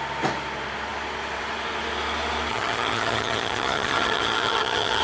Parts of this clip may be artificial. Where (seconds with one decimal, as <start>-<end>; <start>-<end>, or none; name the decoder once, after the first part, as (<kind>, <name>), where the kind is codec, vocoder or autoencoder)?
2.5-5.0 (vocoder, HiFi-GAN)